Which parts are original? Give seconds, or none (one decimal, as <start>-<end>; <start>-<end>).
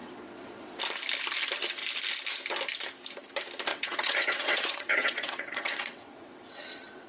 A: 0.8-3.7